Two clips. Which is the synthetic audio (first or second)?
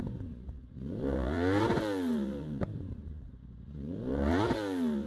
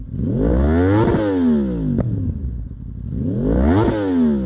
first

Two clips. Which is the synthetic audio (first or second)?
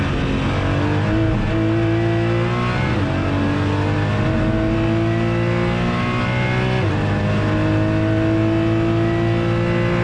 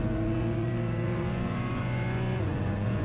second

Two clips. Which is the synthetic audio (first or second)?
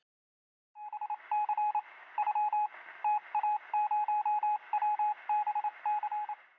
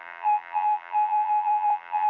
second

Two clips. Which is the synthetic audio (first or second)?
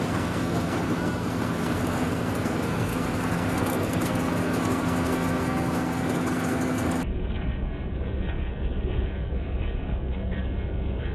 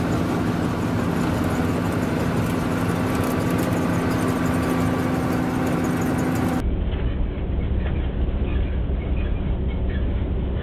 first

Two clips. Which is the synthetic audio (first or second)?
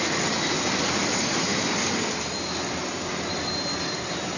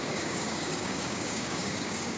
second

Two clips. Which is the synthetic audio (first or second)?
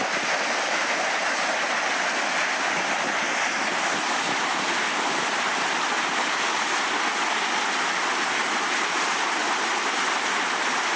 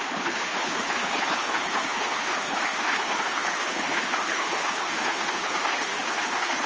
second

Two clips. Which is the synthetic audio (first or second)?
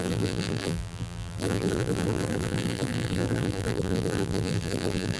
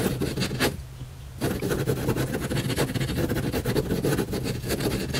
first